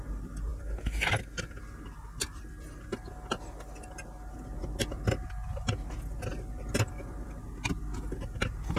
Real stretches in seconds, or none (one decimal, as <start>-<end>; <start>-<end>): 0.0-8.8